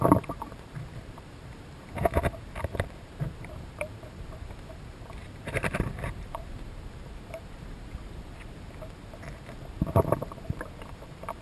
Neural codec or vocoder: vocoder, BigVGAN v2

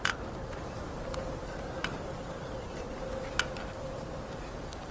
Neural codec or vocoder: none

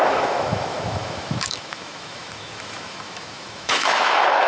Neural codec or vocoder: autoencoder, DAC-VAE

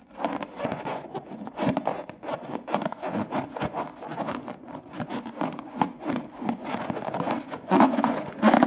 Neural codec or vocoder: vocoder, Vocos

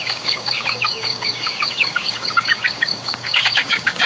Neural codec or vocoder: codec, DAC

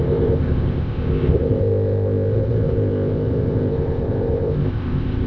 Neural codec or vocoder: codec, ZipCodec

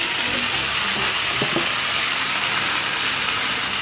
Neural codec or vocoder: none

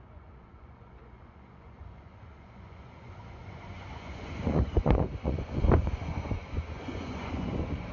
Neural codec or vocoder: vocoder, Vocos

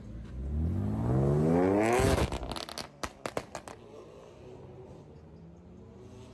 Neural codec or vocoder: none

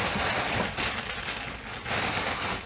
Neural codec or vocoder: none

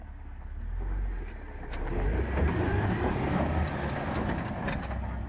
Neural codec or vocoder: none